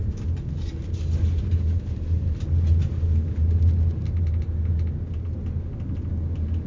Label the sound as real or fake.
real